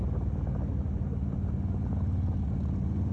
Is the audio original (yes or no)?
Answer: yes